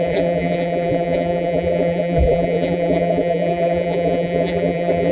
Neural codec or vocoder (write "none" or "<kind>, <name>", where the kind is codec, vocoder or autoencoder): vocoder, BigVGAN v2